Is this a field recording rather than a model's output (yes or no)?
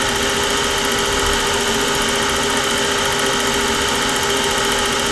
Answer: yes